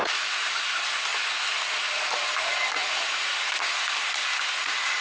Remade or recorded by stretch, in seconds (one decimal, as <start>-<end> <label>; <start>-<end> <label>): 0.0-5.0 recorded